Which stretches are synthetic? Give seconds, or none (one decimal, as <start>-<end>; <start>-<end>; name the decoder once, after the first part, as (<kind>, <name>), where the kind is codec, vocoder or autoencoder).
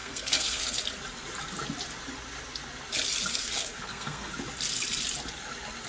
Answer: 0.0-0.8 (codec, SNAC); 3.3-4.3